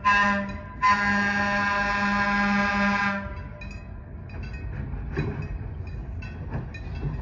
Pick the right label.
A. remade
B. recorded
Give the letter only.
B